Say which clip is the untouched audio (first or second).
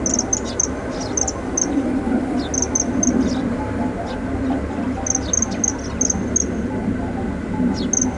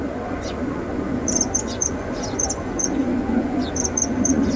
first